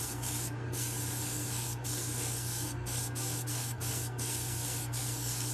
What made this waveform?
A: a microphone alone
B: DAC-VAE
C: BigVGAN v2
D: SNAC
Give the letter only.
D